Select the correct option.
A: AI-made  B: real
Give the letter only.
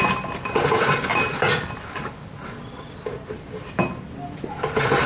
B